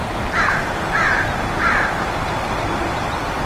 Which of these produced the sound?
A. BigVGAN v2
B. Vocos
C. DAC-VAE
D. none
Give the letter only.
D